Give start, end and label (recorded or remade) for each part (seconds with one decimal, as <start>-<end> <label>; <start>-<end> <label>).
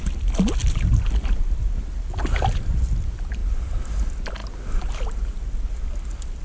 0.0-6.4 recorded